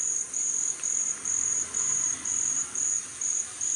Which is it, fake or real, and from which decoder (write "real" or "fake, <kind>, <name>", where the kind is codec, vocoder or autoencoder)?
fake, vocoder, BigVGAN v2